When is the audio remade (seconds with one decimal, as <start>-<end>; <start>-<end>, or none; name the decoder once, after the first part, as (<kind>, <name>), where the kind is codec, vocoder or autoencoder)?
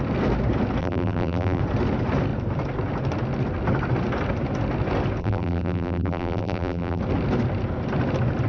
0.8-1.6 (vocoder, BigVGAN v2); 5.2-7.0